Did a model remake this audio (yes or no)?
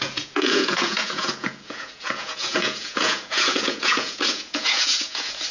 yes